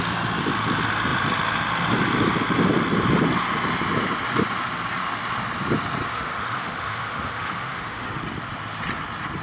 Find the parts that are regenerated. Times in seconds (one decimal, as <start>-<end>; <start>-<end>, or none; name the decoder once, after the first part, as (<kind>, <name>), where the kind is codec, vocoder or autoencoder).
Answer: 6.1-8.2 (autoencoder, DAC-VAE)